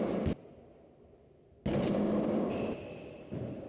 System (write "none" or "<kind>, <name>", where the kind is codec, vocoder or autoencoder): none